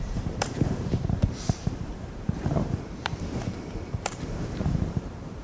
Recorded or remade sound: remade